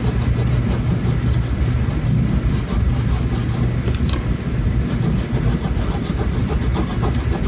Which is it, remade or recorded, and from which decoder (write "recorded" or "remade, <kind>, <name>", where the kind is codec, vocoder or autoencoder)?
recorded